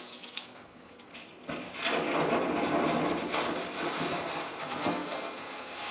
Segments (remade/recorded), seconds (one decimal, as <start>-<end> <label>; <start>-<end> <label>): 0.0-1.1 remade; 1.1-4.6 recorded; 4.6-5.9 remade